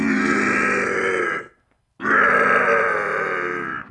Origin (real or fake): real